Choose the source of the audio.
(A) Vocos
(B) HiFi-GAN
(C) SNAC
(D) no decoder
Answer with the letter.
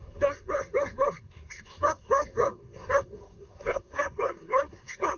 C